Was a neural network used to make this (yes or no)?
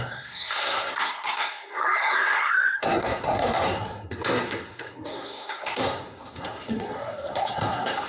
yes